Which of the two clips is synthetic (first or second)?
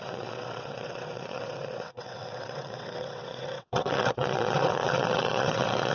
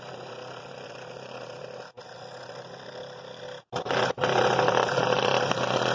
first